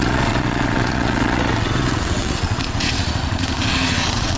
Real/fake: fake